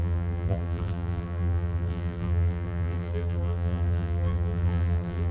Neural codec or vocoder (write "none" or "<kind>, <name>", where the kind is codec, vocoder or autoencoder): vocoder, BigVGAN v2